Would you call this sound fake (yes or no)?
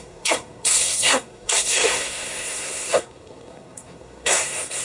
yes